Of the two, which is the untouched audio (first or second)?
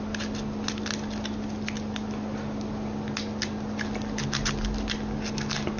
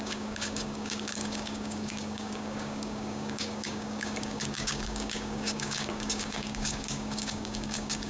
first